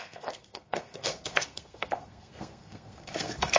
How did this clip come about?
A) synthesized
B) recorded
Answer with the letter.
A